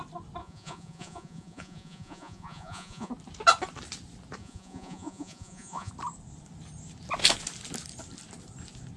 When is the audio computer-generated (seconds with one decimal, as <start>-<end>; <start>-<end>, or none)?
0.4-3.1; 4.4-5.9